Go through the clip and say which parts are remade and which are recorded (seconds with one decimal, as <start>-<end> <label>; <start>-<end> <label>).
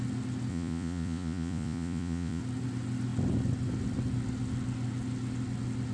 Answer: 0.0-0.5 recorded; 0.5-2.4 remade; 2.4-5.9 recorded